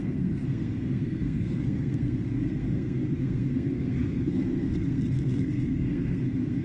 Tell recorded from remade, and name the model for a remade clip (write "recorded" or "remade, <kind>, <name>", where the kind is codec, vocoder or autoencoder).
remade, codec, SNAC